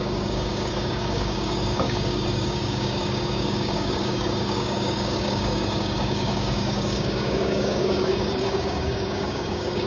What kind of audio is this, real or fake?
fake